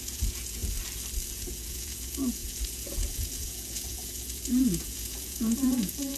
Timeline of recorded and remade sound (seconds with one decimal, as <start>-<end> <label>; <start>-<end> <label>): 0.0-0.6 remade; 0.6-1.3 recorded; 1.3-6.2 remade